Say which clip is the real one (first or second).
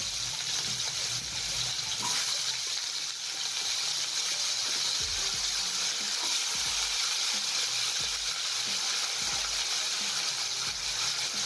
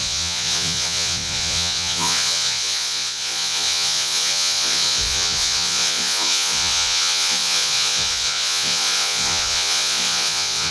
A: first